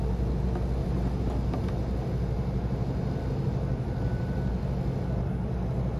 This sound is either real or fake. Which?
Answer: real